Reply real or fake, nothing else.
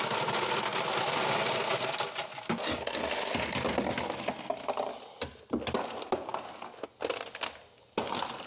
real